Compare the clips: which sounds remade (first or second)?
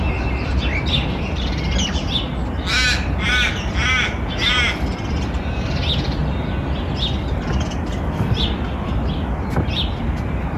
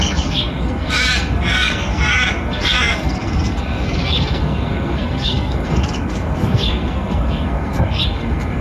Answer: second